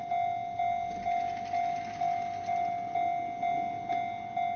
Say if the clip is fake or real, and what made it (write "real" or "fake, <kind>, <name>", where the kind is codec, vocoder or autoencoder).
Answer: real